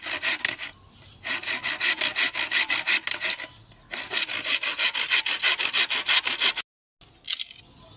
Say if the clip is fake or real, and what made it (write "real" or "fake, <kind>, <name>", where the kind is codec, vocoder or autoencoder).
real